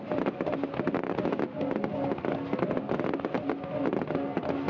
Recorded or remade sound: recorded